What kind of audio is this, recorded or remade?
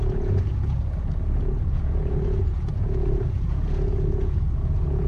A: remade